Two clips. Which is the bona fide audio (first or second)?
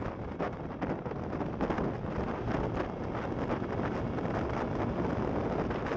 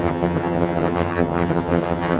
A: first